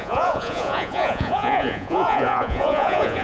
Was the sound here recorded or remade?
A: remade